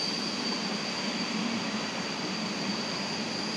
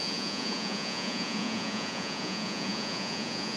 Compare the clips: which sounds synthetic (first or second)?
second